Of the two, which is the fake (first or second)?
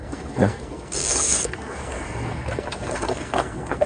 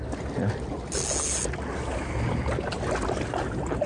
first